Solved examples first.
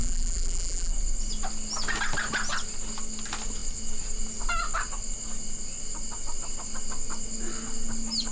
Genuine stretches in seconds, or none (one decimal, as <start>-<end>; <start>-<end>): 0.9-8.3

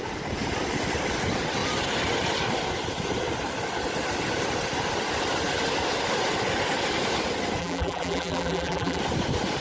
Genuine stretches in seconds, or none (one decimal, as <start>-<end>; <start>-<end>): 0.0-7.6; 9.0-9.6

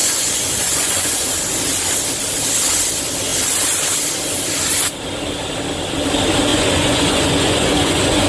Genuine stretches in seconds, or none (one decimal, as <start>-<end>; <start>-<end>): 1.3-6.5

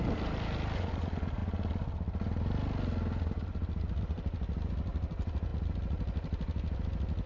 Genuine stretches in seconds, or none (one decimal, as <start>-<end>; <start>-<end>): 0.0-7.3

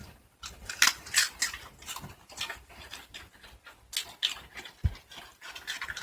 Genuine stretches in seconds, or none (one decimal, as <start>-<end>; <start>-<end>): 3.3-6.0

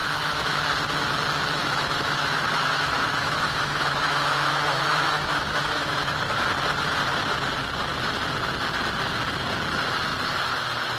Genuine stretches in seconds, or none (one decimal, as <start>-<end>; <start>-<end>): 0.6-1.6; 6.3-11.0